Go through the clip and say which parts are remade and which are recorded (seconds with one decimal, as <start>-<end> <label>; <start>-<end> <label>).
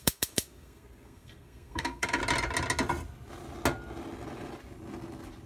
0.0-2.2 remade; 2.2-5.5 recorded